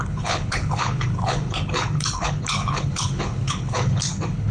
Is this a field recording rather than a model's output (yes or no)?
no